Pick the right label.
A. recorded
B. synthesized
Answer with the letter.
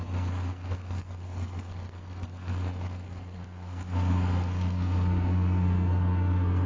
B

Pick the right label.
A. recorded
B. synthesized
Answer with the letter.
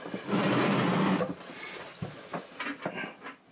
A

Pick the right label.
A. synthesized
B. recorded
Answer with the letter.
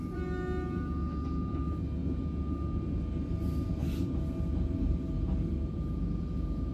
B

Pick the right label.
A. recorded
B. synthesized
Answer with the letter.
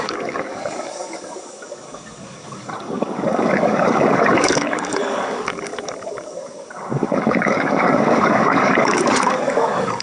B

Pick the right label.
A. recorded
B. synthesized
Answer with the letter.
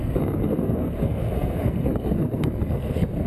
B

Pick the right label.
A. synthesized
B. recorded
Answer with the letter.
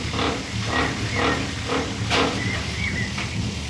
B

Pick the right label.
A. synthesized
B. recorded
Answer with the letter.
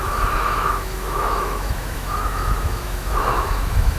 A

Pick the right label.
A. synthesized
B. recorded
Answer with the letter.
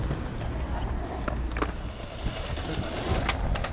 B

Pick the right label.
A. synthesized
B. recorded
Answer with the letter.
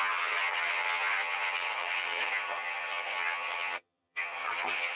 A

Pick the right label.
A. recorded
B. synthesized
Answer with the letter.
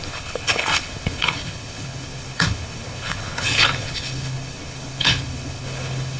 B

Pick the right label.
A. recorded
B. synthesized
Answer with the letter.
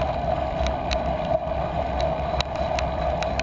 A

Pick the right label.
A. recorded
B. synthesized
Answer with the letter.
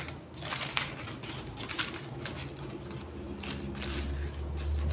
A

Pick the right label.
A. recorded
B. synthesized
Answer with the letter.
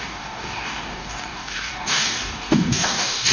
B